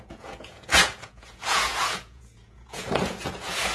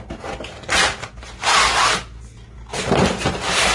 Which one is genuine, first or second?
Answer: second